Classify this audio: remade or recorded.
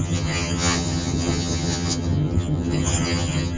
remade